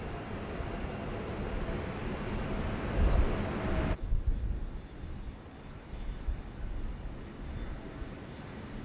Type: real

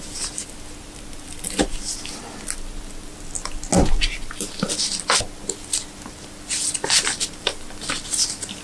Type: real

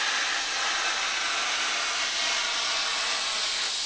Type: real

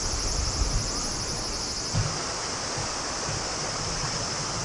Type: real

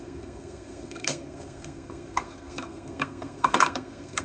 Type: fake